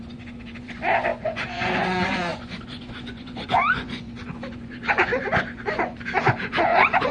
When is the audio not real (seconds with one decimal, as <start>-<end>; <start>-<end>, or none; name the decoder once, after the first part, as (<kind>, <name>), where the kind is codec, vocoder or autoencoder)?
0.0-7.1 (vocoder, Vocos)